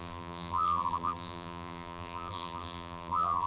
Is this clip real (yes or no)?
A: no